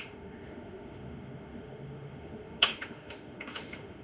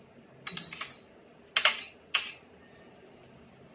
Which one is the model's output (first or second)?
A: first